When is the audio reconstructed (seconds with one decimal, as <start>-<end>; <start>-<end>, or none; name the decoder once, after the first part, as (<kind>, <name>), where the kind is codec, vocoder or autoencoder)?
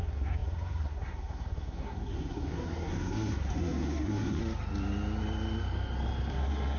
0.0-4.4 (codec, SNAC); 6.3-6.8